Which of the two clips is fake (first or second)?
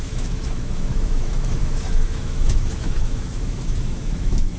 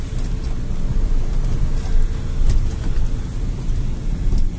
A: first